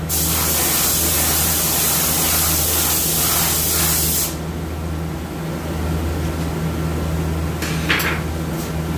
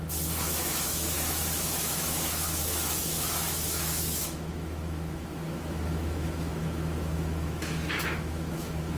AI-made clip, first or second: second